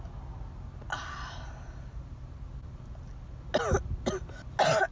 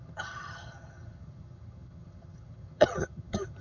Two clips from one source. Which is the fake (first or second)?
second